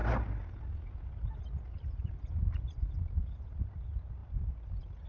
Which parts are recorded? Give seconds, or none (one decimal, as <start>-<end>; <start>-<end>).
0.0-5.1